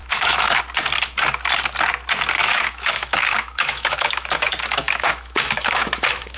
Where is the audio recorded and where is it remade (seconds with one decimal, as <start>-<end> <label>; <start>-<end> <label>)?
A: 0.0-0.6 remade; 0.6-2.4 recorded; 2.4-6.4 remade